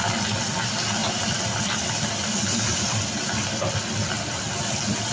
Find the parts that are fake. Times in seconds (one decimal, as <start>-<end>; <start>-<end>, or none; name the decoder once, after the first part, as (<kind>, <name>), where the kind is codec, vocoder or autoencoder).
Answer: none